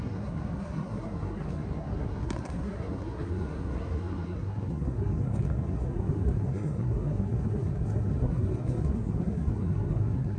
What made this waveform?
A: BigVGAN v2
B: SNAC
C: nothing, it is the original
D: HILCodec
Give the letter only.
B